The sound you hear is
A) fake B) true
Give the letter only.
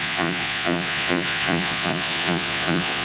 A